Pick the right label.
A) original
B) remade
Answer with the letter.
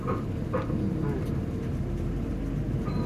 A